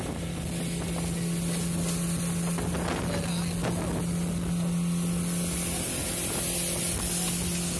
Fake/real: real